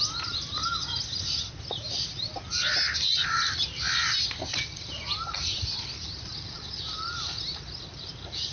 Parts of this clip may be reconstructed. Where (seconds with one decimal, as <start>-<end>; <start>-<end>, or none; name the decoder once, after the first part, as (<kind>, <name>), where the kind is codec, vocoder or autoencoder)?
none